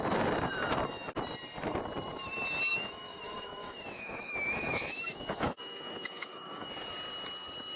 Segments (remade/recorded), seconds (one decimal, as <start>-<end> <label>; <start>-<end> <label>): 0.0-2.7 recorded; 2.7-6.7 remade; 6.7-7.8 recorded